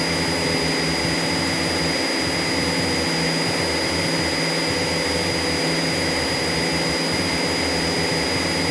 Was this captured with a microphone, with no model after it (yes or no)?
yes